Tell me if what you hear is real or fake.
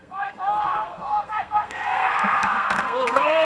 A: fake